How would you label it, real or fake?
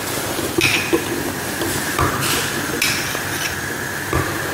real